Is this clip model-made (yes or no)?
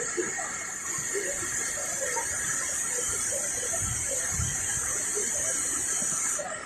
no